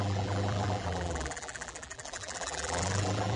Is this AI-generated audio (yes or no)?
yes